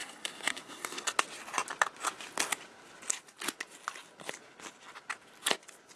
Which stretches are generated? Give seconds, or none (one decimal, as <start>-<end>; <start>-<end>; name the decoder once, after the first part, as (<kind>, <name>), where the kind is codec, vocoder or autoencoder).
0.0-1.1 (codec, SNAC)